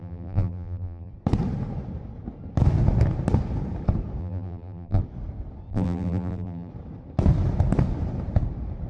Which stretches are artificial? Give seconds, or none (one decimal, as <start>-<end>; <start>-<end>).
0.0-1.1; 4.2-5.0; 5.7-6.7